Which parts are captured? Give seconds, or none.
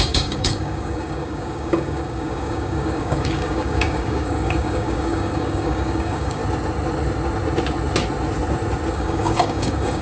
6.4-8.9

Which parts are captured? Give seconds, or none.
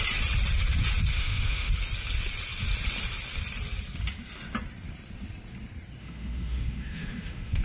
0.0-1.1; 1.7-6.0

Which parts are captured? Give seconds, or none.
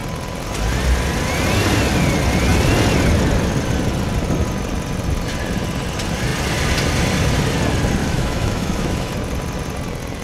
0.0-8.0; 9.1-10.2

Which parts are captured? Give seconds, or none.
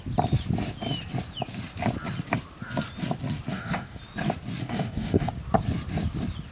0.0-3.5; 4.0-4.6; 5.3-6.5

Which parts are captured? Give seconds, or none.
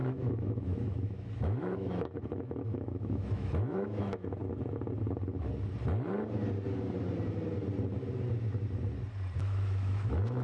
4.4-9.4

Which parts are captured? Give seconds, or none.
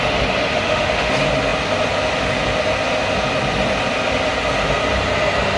0.0-0.5; 1.1-5.6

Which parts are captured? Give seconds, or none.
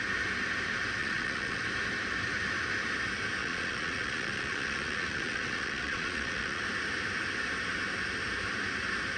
0.0-1.0; 1.6-3.4; 6.6-9.2